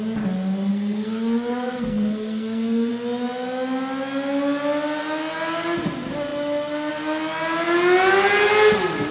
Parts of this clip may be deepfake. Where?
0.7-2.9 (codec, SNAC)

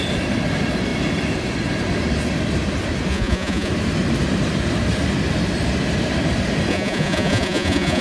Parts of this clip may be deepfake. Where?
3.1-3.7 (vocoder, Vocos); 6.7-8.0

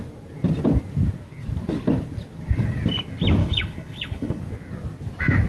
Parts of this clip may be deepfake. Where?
3.4-4.4 (codec, HILCodec)

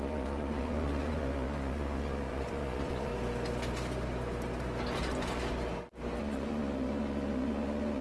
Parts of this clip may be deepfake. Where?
0.0-3.1 (vocoder, Vocos); 6.2-8.0

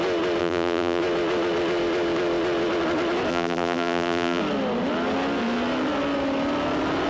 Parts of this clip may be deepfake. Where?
0.4-1.0 (vocoder, BigVGAN v2); 3.3-4.4

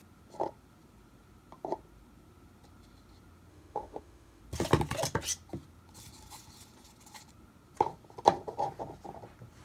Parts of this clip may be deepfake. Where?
3.5-4.4 (autoencoder, DAC-VAE)

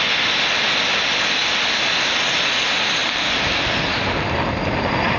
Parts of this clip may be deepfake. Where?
3.0-3.7 (vocoder, BigVGAN v2)